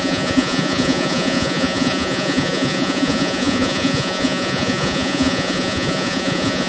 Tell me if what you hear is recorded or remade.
remade